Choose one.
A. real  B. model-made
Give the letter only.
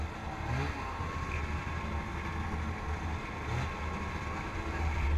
A